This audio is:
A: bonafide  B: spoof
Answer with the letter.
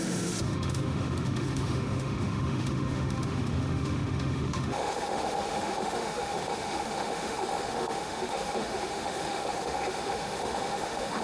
B